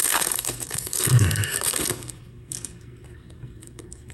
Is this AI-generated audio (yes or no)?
yes